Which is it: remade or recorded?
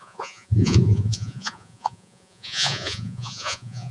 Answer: remade